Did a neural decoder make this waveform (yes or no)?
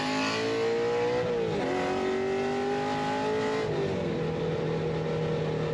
no